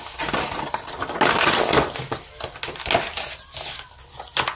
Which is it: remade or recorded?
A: recorded